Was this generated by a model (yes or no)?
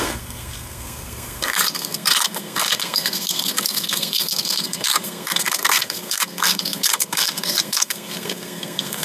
yes